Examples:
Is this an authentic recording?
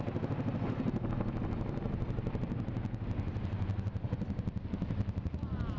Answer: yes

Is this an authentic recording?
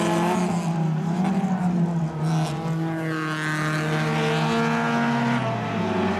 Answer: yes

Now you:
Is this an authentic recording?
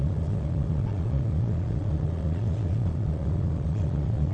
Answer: no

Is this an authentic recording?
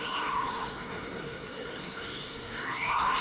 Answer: no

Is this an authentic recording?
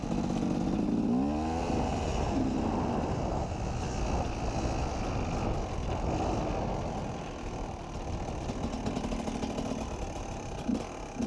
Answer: yes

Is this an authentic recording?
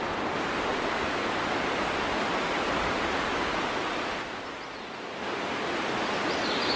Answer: yes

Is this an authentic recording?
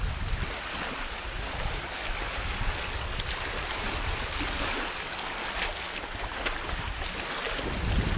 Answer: yes